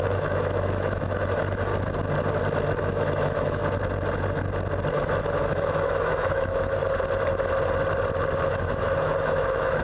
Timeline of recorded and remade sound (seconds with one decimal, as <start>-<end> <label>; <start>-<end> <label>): 0.0-1.7 remade; 1.7-2.8 recorded; 2.8-3.6 remade; 3.6-4.9 recorded; 4.9-6.8 remade; 6.8-8.4 recorded; 8.4-9.8 remade